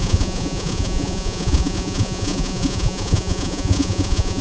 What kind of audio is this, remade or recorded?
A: remade